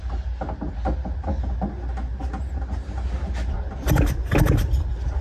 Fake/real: real